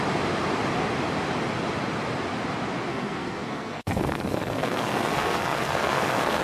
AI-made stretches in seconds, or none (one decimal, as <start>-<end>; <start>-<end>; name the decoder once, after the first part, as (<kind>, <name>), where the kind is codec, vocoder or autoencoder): 2.9-6.4 (codec, SNAC)